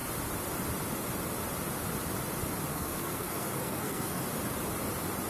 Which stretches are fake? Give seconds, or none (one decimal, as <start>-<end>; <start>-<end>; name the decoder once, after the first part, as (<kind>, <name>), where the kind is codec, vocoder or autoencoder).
2.7-4.2 (codec, SNAC)